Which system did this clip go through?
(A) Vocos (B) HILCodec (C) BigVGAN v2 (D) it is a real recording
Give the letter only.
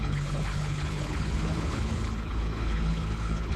B